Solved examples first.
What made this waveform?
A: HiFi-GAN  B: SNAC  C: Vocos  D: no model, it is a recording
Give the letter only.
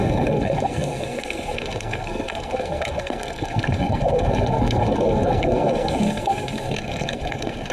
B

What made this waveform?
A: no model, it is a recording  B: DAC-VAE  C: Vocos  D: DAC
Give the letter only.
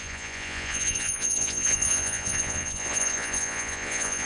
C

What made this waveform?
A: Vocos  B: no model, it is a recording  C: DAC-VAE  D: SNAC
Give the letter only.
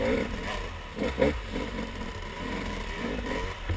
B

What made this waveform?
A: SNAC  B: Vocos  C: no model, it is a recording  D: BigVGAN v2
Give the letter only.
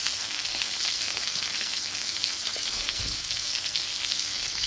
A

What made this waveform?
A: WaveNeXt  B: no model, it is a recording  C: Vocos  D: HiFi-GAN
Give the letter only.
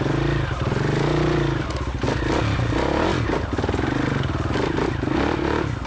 B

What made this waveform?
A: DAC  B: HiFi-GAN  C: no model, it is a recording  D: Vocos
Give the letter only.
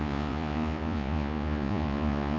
D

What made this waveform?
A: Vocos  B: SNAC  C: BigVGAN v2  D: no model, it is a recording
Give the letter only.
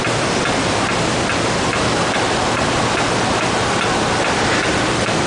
D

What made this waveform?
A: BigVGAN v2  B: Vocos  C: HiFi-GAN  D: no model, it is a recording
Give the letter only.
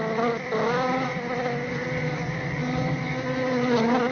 D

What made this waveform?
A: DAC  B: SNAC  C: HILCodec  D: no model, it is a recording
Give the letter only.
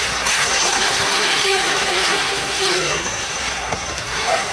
B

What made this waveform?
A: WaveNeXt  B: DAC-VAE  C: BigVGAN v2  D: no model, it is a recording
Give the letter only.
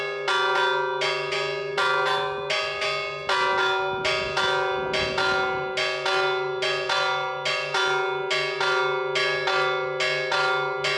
D